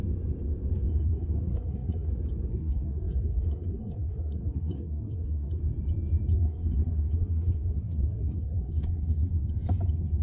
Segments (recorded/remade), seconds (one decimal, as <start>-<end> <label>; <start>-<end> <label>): 0.0-0.9 recorded; 0.9-2.1 remade; 2.1-2.5 recorded; 2.5-5.6 remade; 5.6-6.3 recorded; 6.3-9.3 remade; 9.3-10.2 recorded